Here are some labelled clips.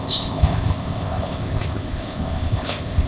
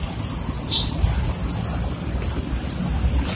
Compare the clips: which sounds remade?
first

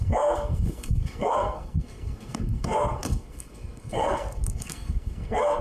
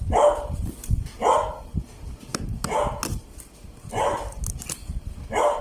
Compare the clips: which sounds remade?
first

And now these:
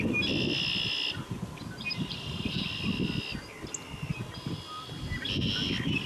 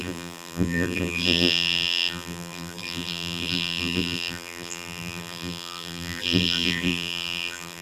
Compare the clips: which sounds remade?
second